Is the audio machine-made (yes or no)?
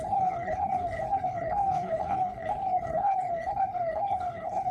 yes